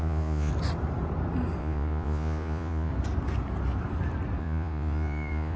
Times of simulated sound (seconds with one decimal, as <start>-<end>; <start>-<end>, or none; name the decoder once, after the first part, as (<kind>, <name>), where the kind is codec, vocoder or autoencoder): 0.0-0.5 (vocoder, Vocos); 1.6-2.9; 4.4-5.6